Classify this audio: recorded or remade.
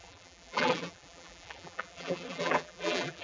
remade